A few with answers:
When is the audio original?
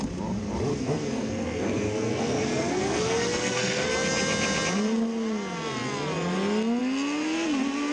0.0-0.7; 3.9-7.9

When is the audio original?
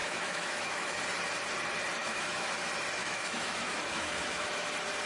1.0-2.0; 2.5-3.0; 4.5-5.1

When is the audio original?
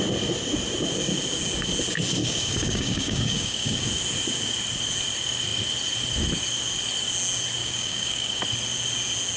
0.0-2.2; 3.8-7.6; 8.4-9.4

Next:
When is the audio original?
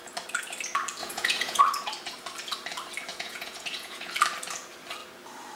0.0-1.0; 1.6-3.1; 4.1-5.6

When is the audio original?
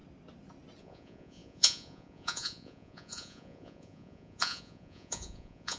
0.0-0.8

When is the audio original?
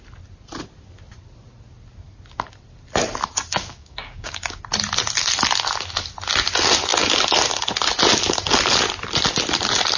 0.0-3.5; 4.6-10.0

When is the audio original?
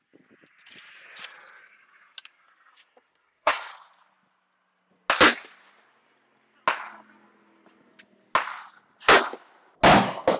0.0-2.9; 3.7-10.4